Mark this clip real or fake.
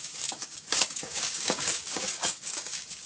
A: fake